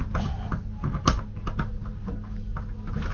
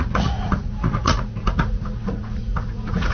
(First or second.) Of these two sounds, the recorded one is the first